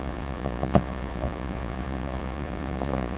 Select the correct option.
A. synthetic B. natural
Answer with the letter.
A